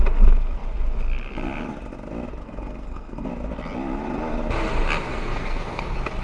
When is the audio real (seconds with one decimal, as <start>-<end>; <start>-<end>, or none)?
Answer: 0.0-2.4; 3.3-5.1; 5.8-6.2